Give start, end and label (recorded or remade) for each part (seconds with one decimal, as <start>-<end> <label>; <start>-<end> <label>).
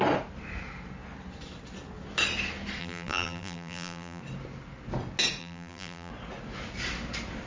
0.0-2.8 recorded; 2.8-4.2 remade; 4.2-5.4 recorded; 5.4-6.1 remade; 6.1-7.5 recorded